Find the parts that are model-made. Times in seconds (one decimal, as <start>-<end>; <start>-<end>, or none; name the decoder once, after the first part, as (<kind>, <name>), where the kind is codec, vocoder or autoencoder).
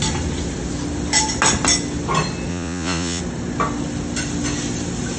2.5-3.2 (vocoder, Vocos)